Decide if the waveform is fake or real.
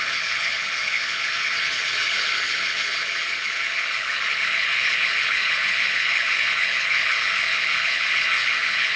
fake